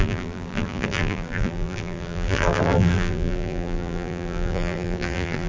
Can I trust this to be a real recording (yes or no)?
no